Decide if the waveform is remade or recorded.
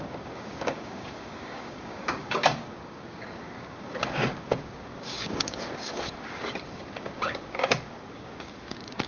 remade